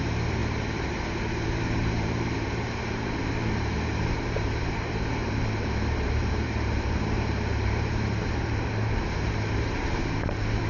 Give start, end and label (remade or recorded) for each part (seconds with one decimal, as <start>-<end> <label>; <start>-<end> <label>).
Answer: 0.0-10.7 remade